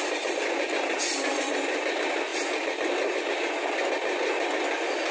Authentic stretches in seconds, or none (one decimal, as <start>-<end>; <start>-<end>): 0.0-5.1